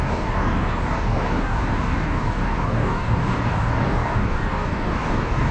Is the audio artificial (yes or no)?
yes